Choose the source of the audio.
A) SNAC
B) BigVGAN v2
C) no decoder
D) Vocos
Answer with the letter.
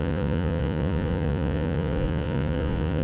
D